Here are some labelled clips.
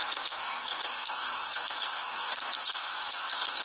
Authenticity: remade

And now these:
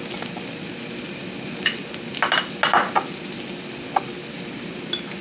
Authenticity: recorded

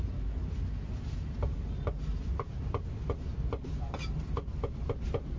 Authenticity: recorded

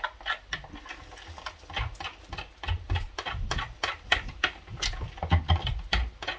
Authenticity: recorded